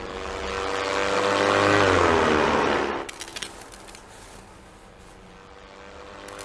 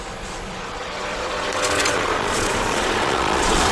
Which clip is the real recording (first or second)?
first